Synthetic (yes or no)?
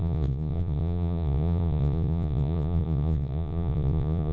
yes